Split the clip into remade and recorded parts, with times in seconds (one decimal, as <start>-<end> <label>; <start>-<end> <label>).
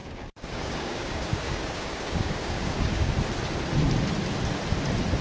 0.0-3.1 remade; 3.1-5.2 recorded